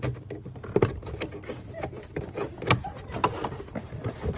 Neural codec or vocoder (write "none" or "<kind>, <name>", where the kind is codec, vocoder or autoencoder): none